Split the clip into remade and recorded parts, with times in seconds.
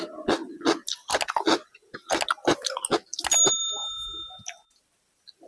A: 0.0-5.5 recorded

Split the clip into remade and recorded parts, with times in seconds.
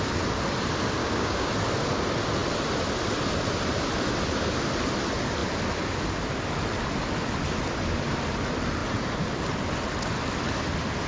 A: 0.0-1.0 recorded; 1.0-1.5 remade; 1.5-11.1 recorded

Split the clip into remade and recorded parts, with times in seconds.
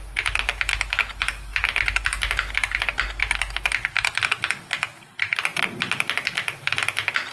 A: 0.0-7.3 recorded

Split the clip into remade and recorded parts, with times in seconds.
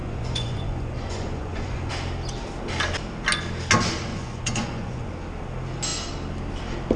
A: 0.0-1.9 remade; 1.9-4.1 recorded; 4.1-5.1 remade; 5.1-7.0 recorded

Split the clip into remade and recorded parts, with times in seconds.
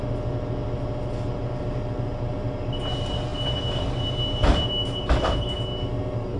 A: 0.0-6.4 recorded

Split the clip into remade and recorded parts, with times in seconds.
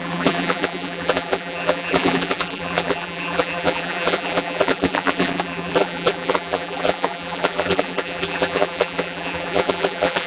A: 0.0-10.3 remade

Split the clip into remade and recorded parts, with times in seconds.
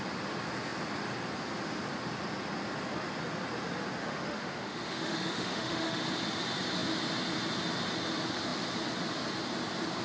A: 0.0-4.0 recorded; 4.0-6.0 remade; 6.0-10.0 recorded